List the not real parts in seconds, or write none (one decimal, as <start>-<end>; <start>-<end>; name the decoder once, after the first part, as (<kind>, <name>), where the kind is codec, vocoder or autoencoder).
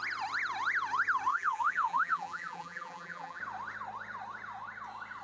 1.3-3.4 (vocoder, BigVGAN v2)